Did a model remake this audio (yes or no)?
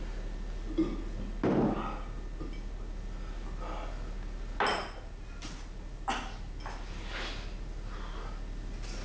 no